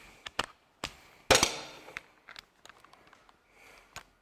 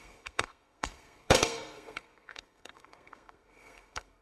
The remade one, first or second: second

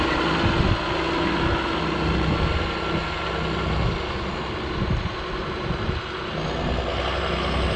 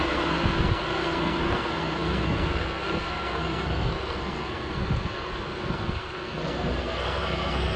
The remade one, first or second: second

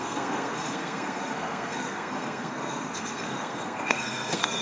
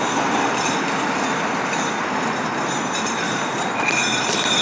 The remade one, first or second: first